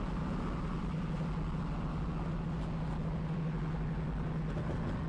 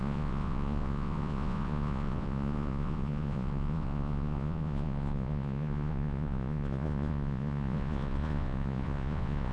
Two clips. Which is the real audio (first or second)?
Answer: first